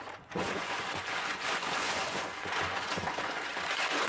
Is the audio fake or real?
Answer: fake